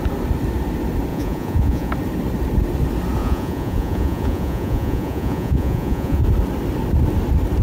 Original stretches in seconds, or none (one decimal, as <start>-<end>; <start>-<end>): 0.0-1.1; 1.9-3.2; 6.2-7.6

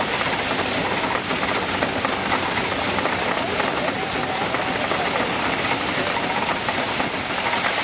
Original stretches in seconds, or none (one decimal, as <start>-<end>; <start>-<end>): 0.0-7.8

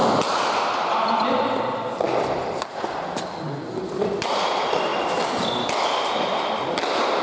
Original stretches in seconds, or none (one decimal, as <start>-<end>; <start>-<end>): 0.0-7.2

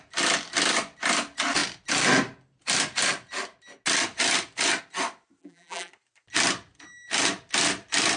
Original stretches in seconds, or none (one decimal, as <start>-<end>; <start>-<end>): 0.0-5.4; 5.9-8.2